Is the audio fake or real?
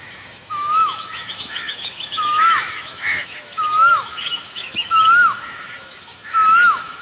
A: fake